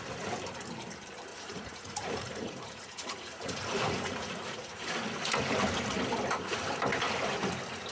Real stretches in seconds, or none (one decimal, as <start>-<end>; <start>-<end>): 0.0-1.3; 5.0-7.9